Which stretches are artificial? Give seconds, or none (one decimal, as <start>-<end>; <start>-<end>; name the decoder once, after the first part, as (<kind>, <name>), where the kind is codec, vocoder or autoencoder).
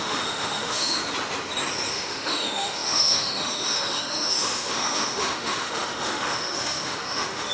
0.0-1.0 (autoencoder, DAC-VAE); 1.9-7.5